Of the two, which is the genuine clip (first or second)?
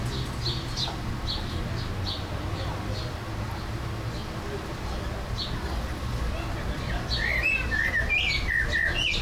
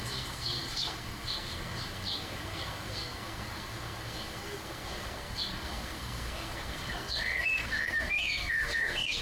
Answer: first